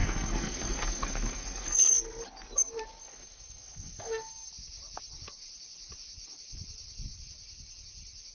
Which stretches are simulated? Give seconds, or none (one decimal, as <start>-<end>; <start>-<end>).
0.0-2.2; 3.0-4.5